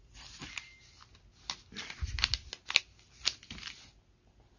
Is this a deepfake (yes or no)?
no